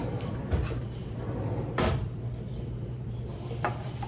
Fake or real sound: fake